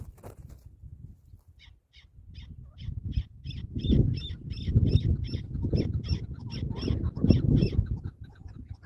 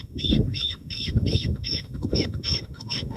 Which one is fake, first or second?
second